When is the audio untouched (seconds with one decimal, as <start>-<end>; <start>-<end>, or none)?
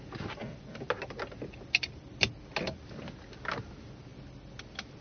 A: 0.0-5.0